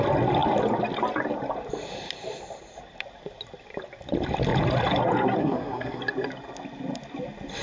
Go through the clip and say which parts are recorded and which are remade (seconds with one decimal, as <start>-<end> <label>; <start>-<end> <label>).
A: 0.0-5.4 recorded; 5.4-6.0 remade; 6.0-7.6 recorded